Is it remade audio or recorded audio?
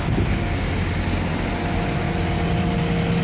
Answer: recorded